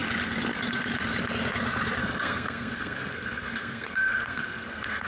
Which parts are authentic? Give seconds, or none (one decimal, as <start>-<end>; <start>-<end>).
0.0-2.0